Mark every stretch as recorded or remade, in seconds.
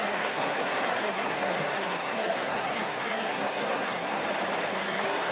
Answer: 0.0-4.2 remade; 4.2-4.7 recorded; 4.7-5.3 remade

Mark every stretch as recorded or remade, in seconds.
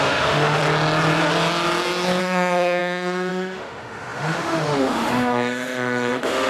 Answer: 0.0-0.6 remade; 0.6-2.2 recorded; 2.2-6.5 remade